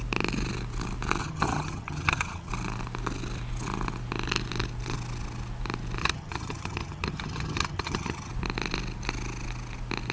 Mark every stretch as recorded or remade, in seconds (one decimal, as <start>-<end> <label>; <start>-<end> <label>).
0.0-1.2 recorded; 1.2-2.5 remade; 2.5-6.0 recorded; 6.0-8.3 remade; 8.3-10.1 recorded